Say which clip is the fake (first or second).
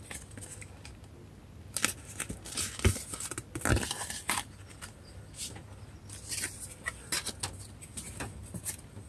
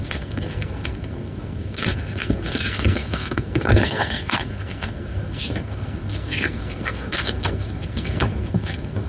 second